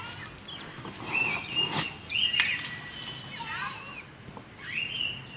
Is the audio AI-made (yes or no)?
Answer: no